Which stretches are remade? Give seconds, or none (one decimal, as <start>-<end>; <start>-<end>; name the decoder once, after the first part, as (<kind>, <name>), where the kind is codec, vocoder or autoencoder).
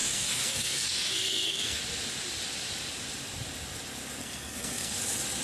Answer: 0.0-1.8 (codec, SNAC); 4.2-5.0